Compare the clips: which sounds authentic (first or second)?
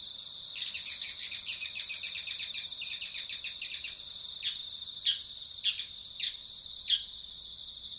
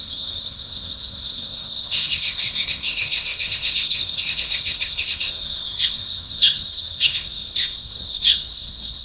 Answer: first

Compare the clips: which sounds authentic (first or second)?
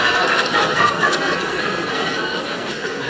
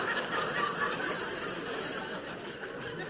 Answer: second